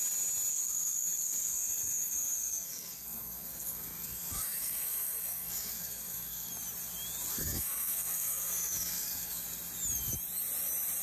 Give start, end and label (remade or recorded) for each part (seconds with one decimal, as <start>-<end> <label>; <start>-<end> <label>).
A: 0.0-0.5 recorded; 0.5-6.5 remade; 6.5-7.3 recorded; 7.3-9.4 remade; 9.4-11.0 recorded